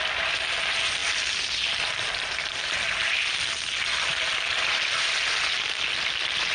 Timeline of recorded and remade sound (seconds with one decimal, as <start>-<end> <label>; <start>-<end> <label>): 0.0-6.5 recorded